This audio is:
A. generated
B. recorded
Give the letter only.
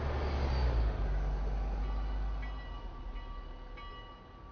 B